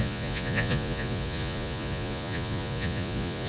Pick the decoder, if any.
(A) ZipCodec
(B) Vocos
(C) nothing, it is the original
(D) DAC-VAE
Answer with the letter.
B